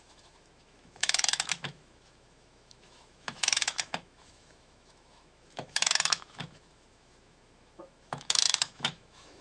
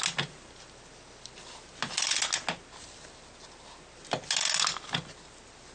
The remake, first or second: first